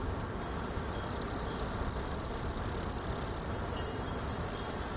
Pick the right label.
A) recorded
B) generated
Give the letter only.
A